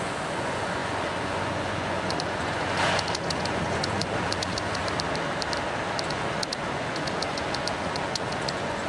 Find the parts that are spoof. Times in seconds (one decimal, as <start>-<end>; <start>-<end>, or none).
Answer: 0.0-4.8; 6.1-8.9

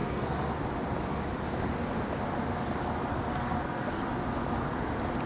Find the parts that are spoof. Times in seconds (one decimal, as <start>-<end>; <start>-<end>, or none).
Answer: 0.0-0.5; 3.1-4.0

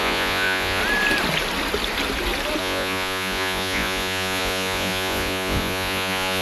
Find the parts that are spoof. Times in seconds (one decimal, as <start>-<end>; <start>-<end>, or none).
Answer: 0.0-0.8; 2.6-6.4

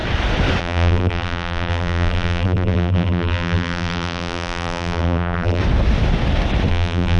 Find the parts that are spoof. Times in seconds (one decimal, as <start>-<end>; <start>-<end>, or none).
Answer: 0.6-5.6; 6.7-7.2

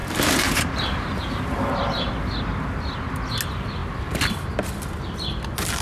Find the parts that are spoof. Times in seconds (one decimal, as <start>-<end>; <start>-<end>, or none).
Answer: 0.0-2.1

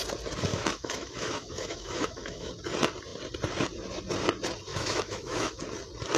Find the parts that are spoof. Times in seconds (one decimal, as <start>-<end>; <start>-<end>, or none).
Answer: 0.5-2.5; 4.7-5.6

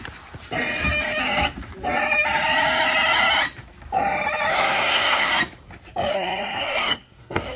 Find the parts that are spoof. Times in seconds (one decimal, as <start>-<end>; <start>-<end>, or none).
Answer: 4.5-5.3; 6.1-7.6